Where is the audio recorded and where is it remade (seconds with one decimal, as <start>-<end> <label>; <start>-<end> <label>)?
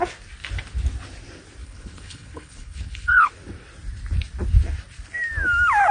0.0-1.6 recorded; 1.6-3.3 remade; 3.3-5.9 recorded